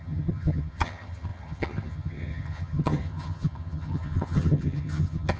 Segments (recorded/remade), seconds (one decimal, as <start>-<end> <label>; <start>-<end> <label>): 0.0-5.4 remade